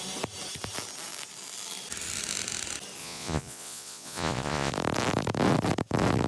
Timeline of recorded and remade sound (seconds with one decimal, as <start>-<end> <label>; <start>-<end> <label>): 0.0-3.0 recorded; 3.0-4.7 remade; 4.7-6.3 recorded